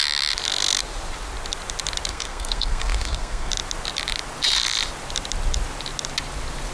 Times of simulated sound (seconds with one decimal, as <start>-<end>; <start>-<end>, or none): 2.1-3.5